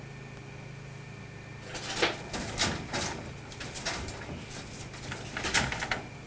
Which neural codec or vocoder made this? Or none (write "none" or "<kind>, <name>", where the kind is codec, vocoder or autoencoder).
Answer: none